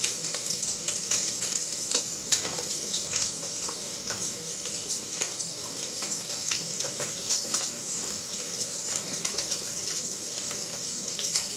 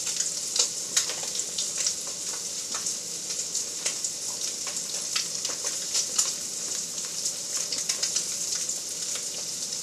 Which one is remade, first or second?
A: first